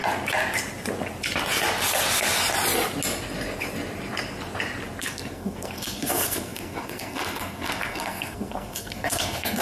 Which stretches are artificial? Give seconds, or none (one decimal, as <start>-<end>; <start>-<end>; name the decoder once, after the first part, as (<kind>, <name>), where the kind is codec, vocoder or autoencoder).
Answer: 5.0-9.6 (codec, SNAC)